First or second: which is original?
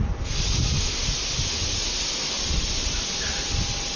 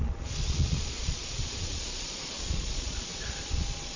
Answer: first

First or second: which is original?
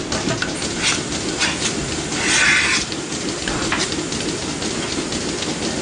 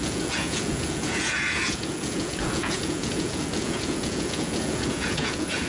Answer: first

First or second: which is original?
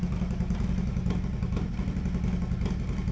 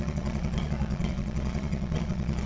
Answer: first